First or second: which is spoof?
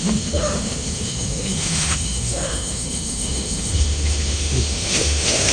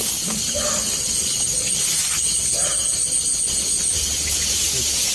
first